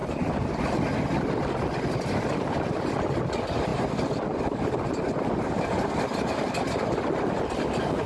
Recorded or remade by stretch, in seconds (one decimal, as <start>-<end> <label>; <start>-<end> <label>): 0.0-8.1 recorded